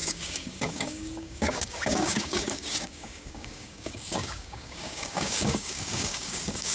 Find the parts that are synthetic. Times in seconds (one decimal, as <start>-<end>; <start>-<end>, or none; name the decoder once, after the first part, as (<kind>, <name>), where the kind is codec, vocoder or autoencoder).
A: 0.0-6.7 (codec, DAC)

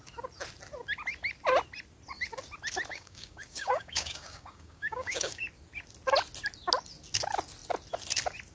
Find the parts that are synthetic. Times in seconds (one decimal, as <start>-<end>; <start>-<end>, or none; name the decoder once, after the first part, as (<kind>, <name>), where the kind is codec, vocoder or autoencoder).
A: 2.9-5.4 (codec, DAC)

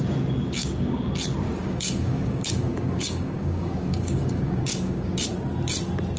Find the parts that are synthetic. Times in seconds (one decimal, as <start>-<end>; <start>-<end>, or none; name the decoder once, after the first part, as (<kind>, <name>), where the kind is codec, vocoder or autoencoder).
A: 0.6-1.1 (codec, DAC); 1.6-5.3

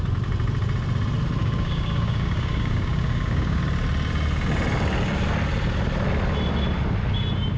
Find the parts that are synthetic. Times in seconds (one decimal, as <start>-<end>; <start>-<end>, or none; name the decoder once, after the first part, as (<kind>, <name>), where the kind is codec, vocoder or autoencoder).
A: 1.4-3.6 (codec, DAC)

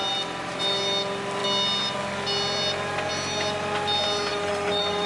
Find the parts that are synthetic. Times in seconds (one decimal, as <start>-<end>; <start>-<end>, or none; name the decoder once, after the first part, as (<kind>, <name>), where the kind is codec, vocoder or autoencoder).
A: 4.3-5.1 (codec, DAC)

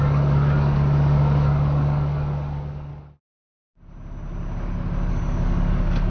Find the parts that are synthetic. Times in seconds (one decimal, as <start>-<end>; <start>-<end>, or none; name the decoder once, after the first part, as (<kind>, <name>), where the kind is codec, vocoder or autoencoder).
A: 0.0-2.9 (codec, DAC); 5.1-6.1

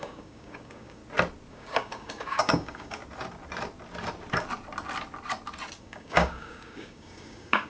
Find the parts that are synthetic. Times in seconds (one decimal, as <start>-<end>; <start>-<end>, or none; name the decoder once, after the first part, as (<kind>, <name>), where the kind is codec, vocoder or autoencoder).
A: 0.0-1.0 (codec, DAC); 1.5-3.0; 5.8-7.7

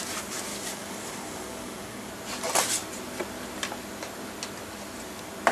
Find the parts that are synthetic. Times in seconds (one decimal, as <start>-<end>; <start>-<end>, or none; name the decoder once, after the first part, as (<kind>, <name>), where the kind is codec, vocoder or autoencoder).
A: 0.5-2.1 (codec, DAC)